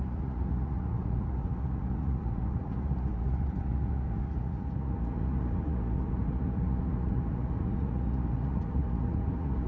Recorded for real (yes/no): no